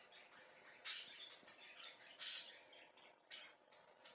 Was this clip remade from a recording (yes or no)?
no